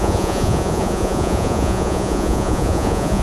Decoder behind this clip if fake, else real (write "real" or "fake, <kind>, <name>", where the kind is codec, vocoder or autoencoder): fake, vocoder, Vocos